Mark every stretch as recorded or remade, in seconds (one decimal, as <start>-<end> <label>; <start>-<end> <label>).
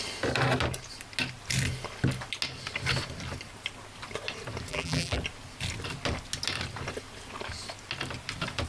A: 0.0-4.7 recorded; 4.7-5.2 remade; 5.2-8.7 recorded